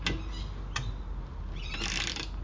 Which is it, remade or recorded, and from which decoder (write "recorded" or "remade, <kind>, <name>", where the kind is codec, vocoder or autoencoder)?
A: recorded